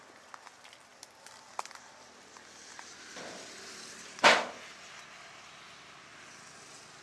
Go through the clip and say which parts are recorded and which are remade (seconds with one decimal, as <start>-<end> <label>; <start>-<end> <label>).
0.0-7.0 recorded